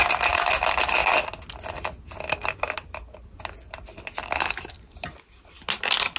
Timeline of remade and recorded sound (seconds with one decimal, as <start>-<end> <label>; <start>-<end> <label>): 0.0-6.2 recorded